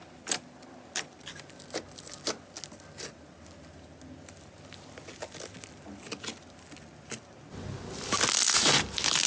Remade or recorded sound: recorded